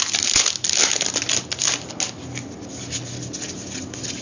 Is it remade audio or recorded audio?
recorded